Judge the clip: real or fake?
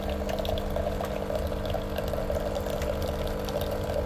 real